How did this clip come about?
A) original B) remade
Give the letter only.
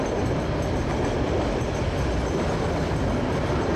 A